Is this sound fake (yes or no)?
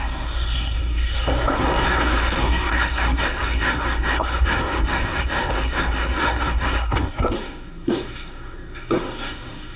yes